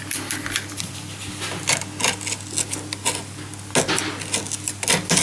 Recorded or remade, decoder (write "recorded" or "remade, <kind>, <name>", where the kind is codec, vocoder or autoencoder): recorded